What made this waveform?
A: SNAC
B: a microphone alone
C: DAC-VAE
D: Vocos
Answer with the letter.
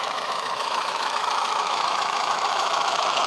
C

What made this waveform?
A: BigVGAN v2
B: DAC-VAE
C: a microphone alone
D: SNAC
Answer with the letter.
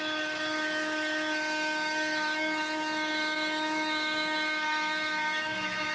B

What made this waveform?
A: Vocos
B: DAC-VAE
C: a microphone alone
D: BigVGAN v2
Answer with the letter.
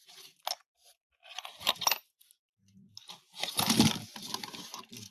C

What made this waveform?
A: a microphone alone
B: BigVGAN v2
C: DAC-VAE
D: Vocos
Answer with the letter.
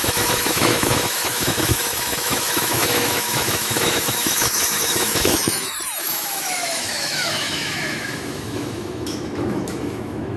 C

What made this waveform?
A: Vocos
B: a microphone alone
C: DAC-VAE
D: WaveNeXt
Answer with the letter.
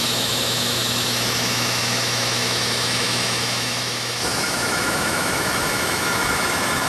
C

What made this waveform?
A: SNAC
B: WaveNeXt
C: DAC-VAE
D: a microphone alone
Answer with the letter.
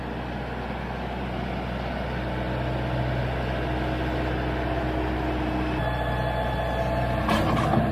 D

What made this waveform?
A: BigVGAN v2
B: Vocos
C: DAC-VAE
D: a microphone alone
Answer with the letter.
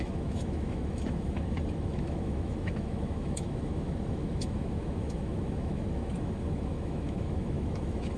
C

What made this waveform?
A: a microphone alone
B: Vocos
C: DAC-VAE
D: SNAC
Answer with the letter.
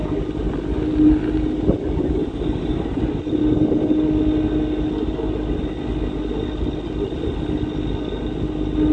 A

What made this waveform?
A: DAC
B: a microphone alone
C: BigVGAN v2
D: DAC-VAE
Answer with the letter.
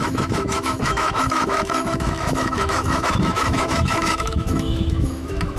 D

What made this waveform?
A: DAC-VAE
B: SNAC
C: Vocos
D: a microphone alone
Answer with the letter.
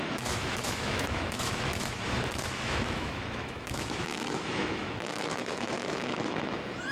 A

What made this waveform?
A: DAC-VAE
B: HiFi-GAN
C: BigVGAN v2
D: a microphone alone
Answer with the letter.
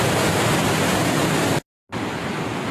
D